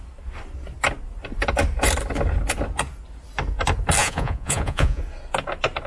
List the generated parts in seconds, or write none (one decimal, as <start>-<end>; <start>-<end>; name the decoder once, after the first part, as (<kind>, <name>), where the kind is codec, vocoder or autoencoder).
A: 4.0-5.0 (vocoder, Vocos)